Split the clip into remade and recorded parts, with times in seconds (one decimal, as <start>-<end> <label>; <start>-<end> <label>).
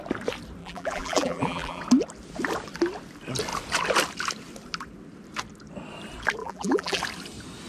0.0-0.6 recorded; 0.6-1.8 remade; 1.8-6.4 recorded; 6.4-7.0 remade; 7.0-7.7 recorded